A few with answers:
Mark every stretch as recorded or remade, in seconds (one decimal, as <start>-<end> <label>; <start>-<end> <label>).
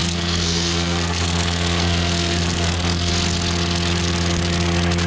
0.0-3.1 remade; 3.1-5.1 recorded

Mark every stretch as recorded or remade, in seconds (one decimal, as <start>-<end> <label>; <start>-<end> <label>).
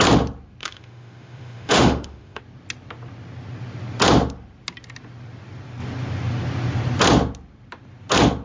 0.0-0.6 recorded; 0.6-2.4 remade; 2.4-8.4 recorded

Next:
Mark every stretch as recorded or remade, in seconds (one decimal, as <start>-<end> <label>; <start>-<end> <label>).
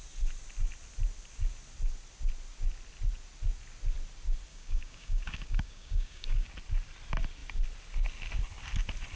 0.0-4.5 recorded; 4.5-6.5 remade; 6.5-9.2 recorded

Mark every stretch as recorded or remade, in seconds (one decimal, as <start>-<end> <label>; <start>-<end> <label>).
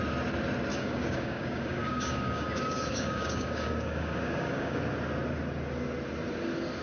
0.0-0.7 recorded; 0.7-4.8 remade; 4.8-6.8 recorded